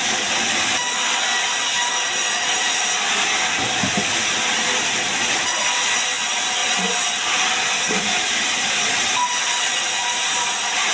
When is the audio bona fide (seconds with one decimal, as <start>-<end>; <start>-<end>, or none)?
0.0-10.9